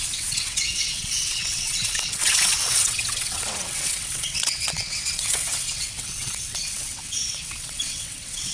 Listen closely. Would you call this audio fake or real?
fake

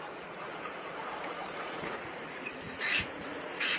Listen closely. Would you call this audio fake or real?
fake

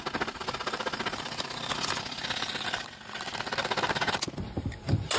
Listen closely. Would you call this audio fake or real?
real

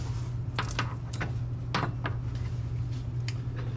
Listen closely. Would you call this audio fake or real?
real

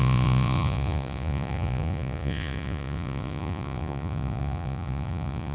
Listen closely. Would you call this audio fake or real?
fake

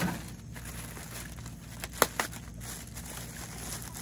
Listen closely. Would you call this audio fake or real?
real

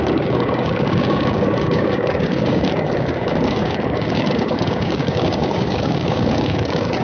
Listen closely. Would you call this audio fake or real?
fake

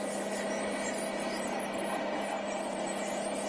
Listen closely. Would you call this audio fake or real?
real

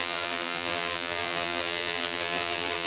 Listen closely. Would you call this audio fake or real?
fake